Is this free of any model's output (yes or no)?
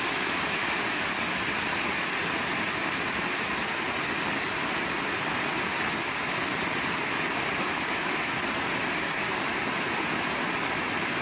yes